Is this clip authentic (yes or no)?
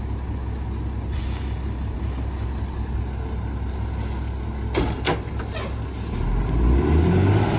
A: yes